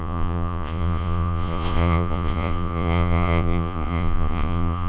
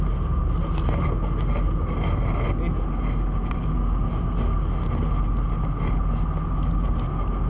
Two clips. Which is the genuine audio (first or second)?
second